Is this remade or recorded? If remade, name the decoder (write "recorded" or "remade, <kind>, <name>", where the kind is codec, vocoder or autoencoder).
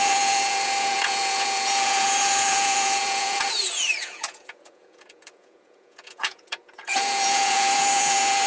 remade, vocoder, Vocos